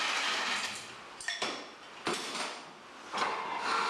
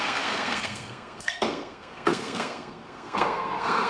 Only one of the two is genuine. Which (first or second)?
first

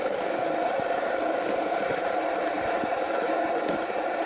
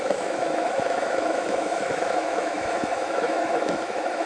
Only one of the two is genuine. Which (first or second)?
first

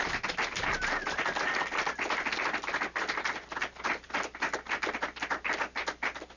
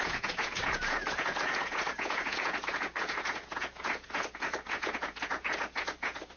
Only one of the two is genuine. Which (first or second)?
first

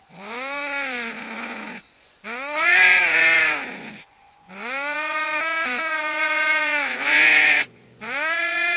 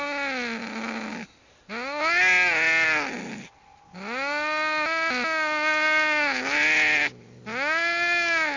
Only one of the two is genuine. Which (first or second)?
second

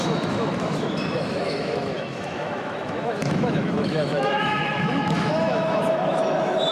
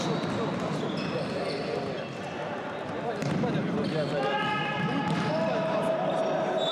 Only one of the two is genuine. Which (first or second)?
second